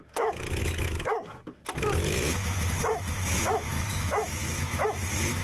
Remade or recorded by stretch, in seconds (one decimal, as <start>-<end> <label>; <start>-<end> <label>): 0.0-5.4 remade